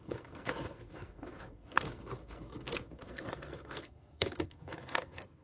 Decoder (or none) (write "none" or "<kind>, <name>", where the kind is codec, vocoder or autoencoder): codec, SNAC